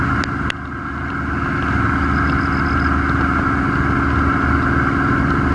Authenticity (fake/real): real